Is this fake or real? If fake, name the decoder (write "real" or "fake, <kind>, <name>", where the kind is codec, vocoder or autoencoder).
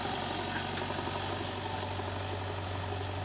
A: real